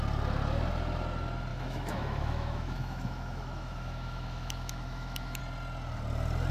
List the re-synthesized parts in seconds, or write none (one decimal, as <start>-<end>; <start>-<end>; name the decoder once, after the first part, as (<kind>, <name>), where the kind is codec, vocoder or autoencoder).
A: 1.5-5.4 (autoencoder, DAC-VAE)